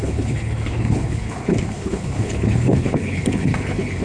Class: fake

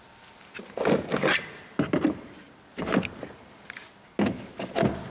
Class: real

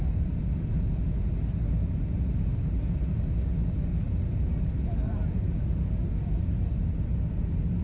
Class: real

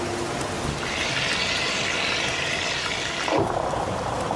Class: real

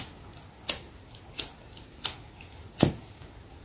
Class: real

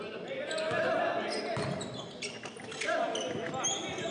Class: real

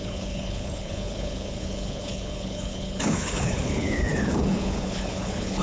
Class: fake